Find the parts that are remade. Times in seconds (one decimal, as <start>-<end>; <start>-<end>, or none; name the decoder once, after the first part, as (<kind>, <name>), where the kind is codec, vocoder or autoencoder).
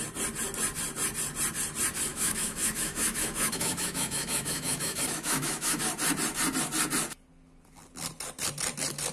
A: 2.1-5.8 (autoencoder, DAC-VAE)